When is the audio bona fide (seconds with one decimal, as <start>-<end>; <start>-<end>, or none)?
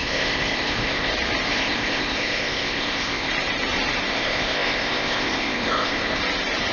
1.1-1.5; 3.3-4.1; 6.2-6.7